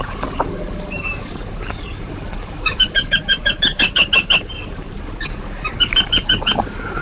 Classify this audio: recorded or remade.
remade